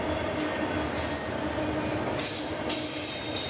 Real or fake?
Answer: real